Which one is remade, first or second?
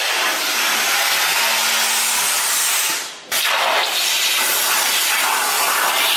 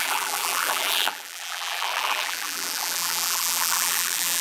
second